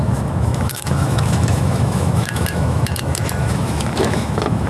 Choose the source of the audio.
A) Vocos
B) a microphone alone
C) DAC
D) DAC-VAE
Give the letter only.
D